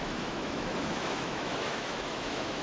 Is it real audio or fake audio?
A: fake